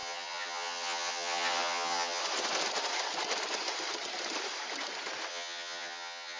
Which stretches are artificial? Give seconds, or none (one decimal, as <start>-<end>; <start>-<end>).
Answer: 0.0-2.2; 5.3-6.4